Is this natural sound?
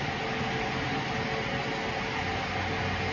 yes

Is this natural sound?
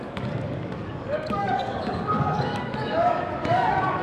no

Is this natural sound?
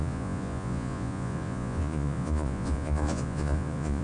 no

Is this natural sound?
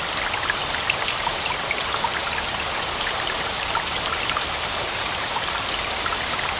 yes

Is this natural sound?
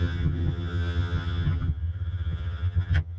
no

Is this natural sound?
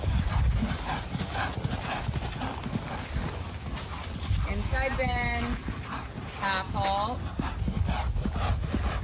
yes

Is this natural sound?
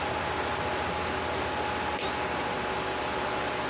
yes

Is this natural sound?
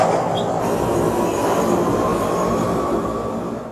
yes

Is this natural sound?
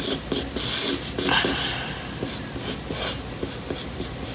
yes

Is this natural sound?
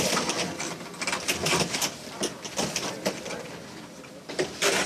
yes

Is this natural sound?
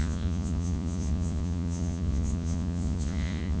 no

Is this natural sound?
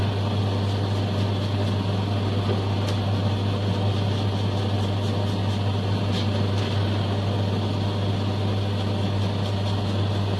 yes